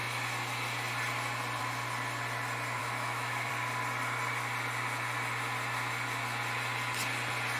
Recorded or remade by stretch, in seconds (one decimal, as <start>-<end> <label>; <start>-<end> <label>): 0.0-2.8 recorded; 2.8-3.5 remade; 3.5-7.6 recorded